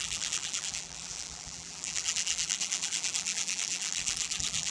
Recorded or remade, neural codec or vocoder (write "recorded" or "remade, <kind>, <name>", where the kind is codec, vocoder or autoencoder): remade, vocoder, BigVGAN v2